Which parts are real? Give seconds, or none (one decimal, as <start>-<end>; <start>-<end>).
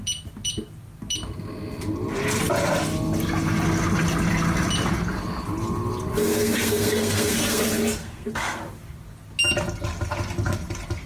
0.0-6.2; 7.6-8.0; 8.6-11.1